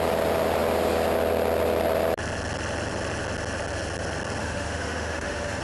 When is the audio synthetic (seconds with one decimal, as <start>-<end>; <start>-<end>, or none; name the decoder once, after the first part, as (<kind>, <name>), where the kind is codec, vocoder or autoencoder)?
4.4-5.6 (autoencoder, DAC-VAE)